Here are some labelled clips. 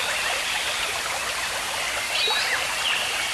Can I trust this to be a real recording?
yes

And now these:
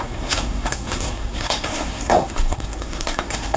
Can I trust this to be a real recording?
no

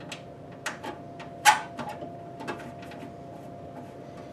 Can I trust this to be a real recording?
yes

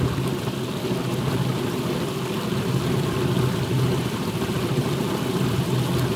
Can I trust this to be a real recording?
yes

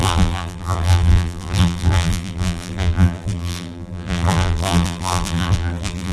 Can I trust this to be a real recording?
no